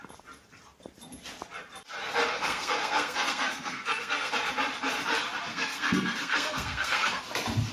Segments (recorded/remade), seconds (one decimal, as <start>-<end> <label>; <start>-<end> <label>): 0.0-2.3 recorded; 2.3-4.3 remade; 4.3-5.5 recorded; 5.5-7.2 remade; 7.2-7.7 recorded